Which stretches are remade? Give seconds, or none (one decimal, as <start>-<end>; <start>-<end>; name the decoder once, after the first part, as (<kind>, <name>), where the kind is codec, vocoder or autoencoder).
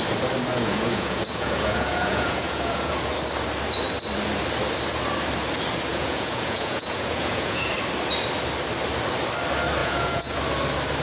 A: 0.5-3.1 (vocoder, Vocos); 5.9-7.7; 9.8-10.4